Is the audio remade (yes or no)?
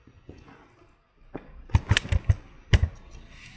no